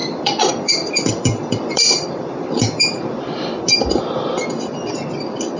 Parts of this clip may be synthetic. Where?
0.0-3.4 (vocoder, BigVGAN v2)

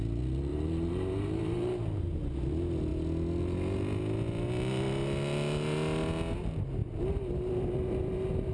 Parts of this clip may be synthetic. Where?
0.5-2.0 (vocoder, BigVGAN v2); 6.8-8.5

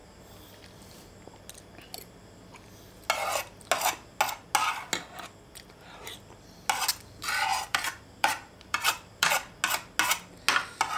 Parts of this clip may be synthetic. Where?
7.5-9.3 (vocoder, BigVGAN v2)

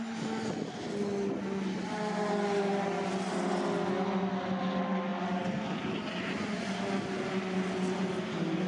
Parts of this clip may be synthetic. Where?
none

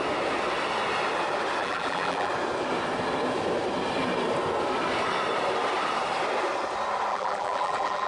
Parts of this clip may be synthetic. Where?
1.6-2.3 (vocoder, BigVGAN v2); 7.1-8.1

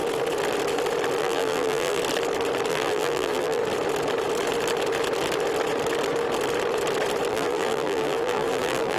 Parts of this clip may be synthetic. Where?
1.2-2.0 (vocoder, BigVGAN v2); 2.7-3.6; 7.3-9.0

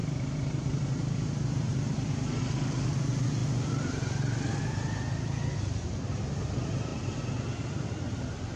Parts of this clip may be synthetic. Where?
0.0-2.4 (vocoder, BigVGAN v2)